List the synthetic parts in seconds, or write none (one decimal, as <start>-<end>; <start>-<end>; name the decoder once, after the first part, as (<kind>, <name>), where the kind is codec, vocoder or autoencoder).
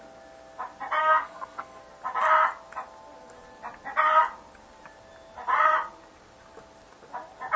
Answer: 1.0-1.8 (codec, SNAC)